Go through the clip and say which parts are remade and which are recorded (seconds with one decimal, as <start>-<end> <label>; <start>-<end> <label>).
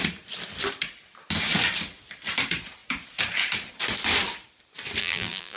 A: 0.0-5.0 recorded; 5.0-5.6 remade